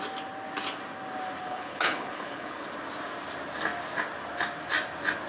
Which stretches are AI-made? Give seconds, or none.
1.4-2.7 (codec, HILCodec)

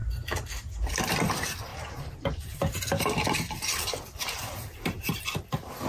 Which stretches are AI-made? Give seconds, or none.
1.7-5.2 (vocoder, BigVGAN v2)